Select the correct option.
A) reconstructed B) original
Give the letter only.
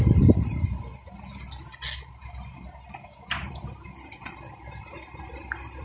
B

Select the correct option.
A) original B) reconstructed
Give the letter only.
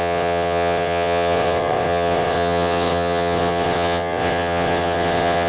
B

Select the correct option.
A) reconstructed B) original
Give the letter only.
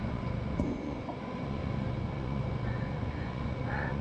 A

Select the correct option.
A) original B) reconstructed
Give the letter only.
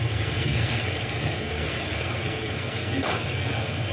B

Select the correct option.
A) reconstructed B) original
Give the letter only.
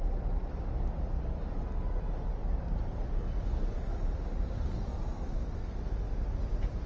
B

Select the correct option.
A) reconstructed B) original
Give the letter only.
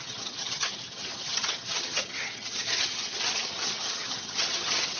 A